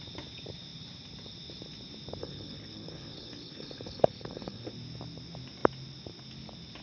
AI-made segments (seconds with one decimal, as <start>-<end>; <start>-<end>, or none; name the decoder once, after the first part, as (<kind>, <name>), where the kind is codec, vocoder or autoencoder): 2.2-4.7 (codec, HILCodec)